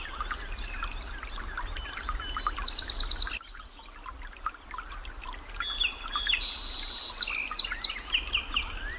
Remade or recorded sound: recorded